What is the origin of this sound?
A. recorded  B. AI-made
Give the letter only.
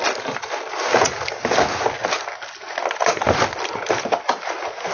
A